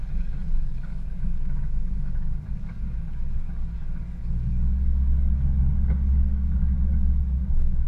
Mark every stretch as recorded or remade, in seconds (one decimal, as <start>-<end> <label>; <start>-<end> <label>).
0.0-7.9 remade

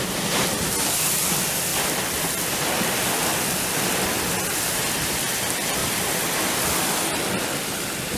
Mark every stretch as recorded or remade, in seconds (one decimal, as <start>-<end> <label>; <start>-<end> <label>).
0.0-5.8 recorded; 5.8-8.2 remade